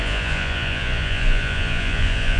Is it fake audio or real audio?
fake